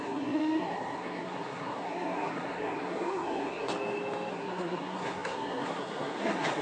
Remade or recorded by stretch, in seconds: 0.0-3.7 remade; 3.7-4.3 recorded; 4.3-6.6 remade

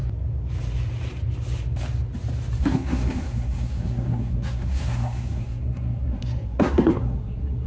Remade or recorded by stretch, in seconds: 0.0-2.6 recorded; 2.6-7.7 remade

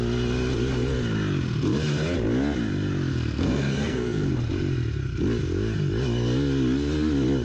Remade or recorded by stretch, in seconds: 0.0-3.1 recorded; 3.1-4.3 remade; 4.3-7.4 recorded

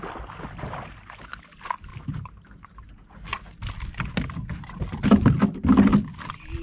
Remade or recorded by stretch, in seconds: 0.0-6.6 recorded

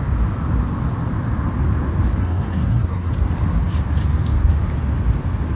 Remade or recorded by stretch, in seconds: 0.0-2.2 recorded; 2.2-3.1 remade; 3.1-5.6 recorded

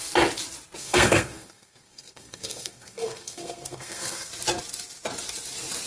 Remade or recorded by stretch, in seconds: 0.0-0.8 recorded; 0.8-4.3 remade; 4.3-5.9 recorded

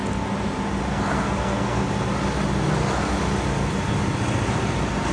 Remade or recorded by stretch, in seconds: 0.0-0.9 recorded; 0.9-1.8 remade; 1.8-5.1 recorded

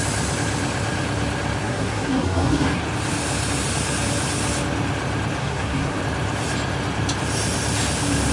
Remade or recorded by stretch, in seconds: 0.0-1.6 recorded; 1.6-2.8 remade; 2.8-5.4 recorded; 5.4-6.0 remade; 6.0-8.3 recorded